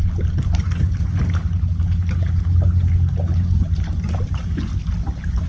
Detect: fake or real real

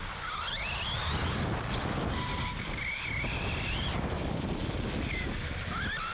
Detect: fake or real real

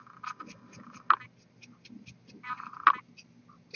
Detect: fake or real real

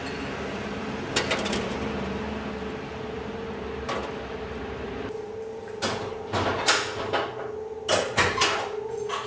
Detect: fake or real real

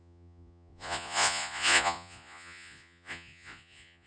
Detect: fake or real fake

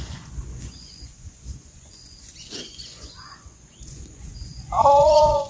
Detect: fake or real fake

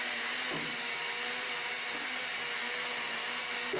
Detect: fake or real real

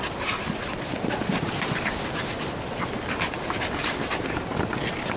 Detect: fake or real real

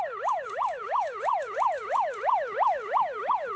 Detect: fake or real fake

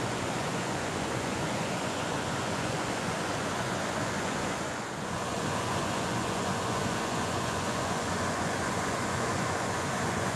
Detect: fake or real fake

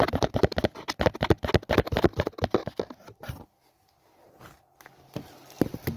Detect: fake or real real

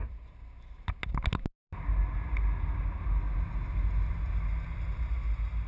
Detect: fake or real real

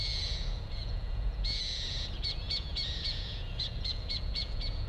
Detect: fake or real fake